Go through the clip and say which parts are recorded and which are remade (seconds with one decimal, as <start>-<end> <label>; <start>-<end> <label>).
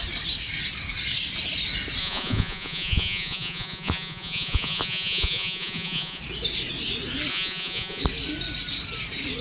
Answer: 0.0-2.0 recorded; 2.0-6.2 remade; 6.2-7.3 recorded; 7.3-8.0 remade; 8.0-9.4 recorded